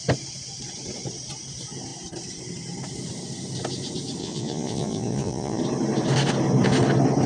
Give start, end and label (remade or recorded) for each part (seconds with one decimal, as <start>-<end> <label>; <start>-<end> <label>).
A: 0.0-4.2 recorded; 4.2-5.6 remade; 5.6-7.3 recorded